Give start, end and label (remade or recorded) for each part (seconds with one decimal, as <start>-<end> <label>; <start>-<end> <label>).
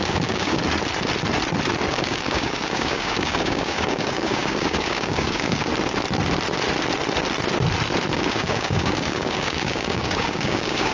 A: 0.0-0.6 remade; 0.6-1.9 recorded; 1.9-5.7 remade; 5.7-8.1 recorded; 8.1-10.9 remade